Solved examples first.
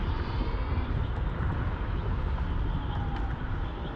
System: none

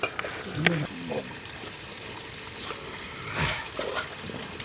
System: none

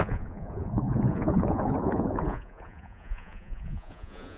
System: vocoder, Vocos